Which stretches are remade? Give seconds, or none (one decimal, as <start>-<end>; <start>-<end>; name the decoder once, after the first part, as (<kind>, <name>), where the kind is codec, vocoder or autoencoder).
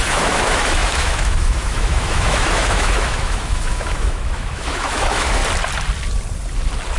0.0-5.4 (autoencoder, DAC-VAE)